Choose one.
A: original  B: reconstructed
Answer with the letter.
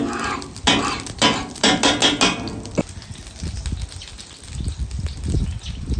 A